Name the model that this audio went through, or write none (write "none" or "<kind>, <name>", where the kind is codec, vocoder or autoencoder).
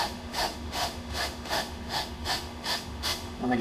autoencoder, DAC-VAE